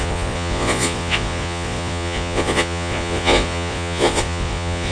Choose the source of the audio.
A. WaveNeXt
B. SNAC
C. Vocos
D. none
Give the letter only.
C